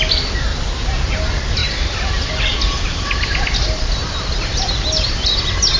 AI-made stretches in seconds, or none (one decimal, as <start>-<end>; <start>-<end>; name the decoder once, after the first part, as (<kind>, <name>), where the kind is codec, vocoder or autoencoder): 0.0-0.5 (vocoder, BigVGAN v2); 1.1-5.8